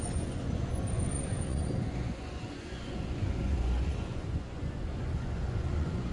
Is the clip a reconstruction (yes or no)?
yes